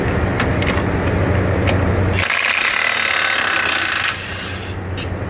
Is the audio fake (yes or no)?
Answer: no